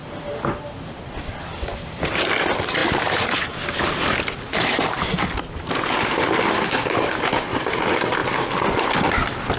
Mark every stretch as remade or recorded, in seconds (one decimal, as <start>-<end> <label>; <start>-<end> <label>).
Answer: 0.0-9.6 recorded